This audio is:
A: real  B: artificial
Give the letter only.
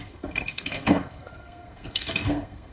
B